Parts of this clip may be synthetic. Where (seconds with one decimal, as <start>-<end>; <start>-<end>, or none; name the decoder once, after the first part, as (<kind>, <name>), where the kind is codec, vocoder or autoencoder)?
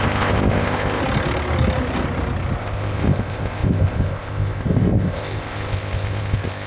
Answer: 0.0-1.0 (codec, ZipCodec); 2.6-6.7